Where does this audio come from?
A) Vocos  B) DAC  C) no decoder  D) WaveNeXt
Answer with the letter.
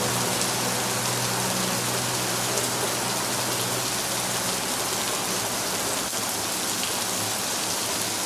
C